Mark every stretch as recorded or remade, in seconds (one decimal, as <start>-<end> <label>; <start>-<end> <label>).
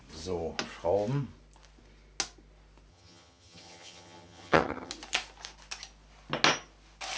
0.0-2.9 recorded; 2.9-4.9 remade; 4.9-7.2 recorded